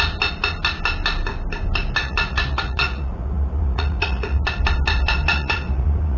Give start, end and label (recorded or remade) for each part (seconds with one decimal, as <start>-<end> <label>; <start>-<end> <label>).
0.0-2.0 recorded; 2.0-4.6 remade; 4.6-5.3 recorded; 5.3-6.2 remade